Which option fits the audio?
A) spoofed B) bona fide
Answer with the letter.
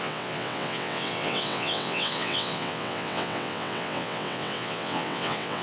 A